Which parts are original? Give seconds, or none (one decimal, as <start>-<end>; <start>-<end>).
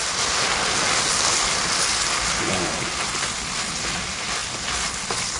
0.0-5.4